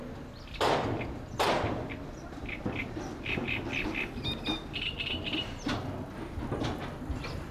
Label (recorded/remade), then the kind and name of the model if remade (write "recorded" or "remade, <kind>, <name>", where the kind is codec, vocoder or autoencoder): recorded